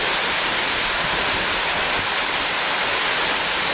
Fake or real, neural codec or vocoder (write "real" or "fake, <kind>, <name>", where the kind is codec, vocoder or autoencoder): real